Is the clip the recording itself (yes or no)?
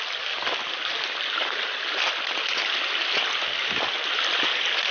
yes